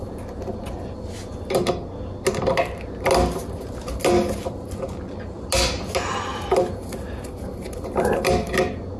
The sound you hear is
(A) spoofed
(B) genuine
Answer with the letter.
B